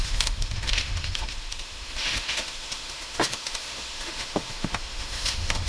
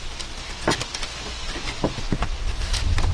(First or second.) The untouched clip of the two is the second